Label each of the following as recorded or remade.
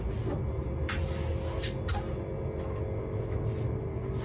recorded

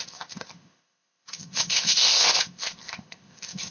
remade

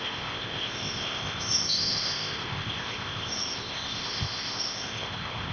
remade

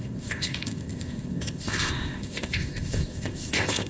remade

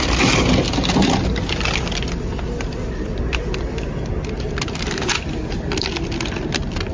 recorded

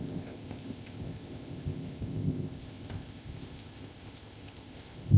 remade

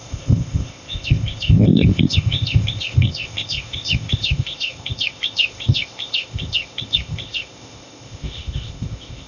remade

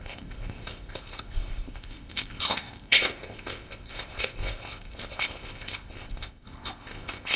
remade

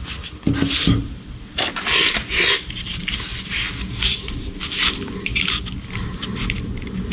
recorded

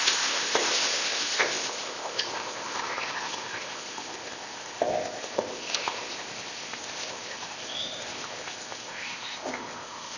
remade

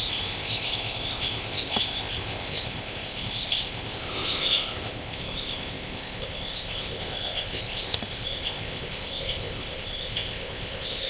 remade